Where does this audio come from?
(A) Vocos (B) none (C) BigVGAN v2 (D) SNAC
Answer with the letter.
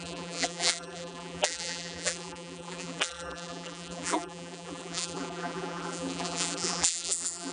C